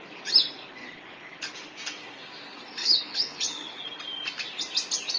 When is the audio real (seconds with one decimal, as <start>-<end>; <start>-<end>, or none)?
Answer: 0.0-0.8; 1.4-2.8; 3.8-5.2